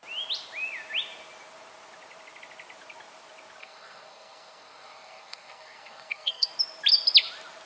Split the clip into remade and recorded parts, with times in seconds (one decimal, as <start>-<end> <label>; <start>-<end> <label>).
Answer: 0.0-3.6 recorded; 3.6-6.5 remade; 6.5-7.7 recorded